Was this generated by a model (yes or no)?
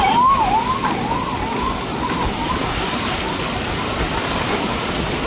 yes